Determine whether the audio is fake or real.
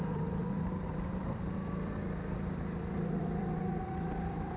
fake